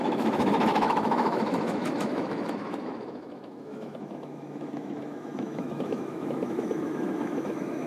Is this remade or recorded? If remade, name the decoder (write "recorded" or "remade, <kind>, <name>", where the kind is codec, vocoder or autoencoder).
remade, autoencoder, DAC-VAE